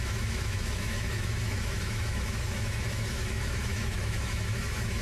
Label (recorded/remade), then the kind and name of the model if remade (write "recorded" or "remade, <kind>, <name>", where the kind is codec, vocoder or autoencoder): remade, autoencoder, DAC-VAE